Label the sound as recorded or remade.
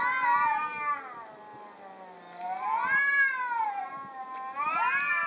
recorded